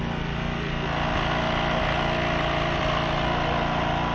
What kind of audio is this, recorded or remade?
recorded